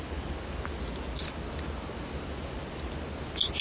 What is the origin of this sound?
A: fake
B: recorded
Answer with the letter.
B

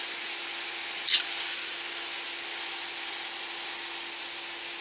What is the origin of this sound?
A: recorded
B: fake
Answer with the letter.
A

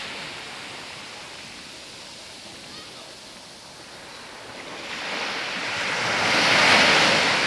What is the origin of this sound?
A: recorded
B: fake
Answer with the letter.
A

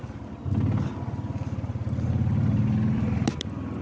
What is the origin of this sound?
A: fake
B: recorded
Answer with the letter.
B